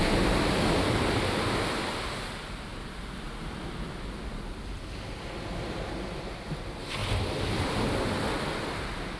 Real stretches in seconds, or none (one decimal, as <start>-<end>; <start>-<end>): 0.0-9.2